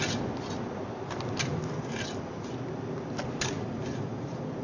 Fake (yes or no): no